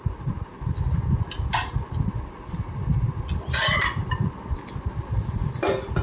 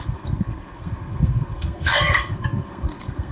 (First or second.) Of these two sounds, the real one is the first